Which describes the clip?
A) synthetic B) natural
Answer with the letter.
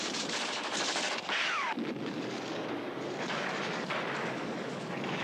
A